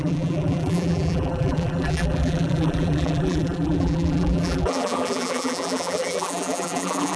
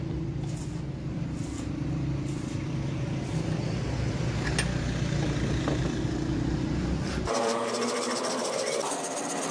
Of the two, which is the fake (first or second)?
first